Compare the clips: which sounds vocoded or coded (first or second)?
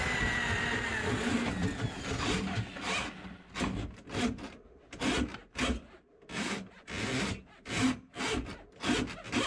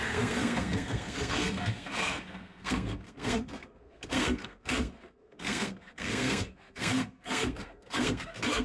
second